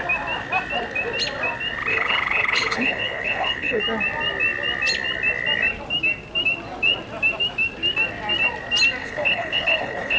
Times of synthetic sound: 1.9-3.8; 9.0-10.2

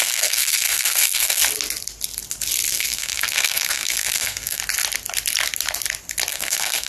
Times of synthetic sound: 0.0-1.4; 2.7-4.6; 6.3-6.9